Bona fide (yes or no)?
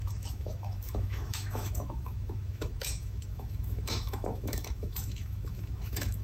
no